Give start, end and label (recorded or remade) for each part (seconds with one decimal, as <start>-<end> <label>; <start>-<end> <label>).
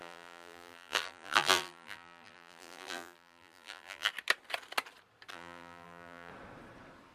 0.0-4.1 remade; 4.1-5.3 recorded; 5.3-6.3 remade; 6.3-7.1 recorded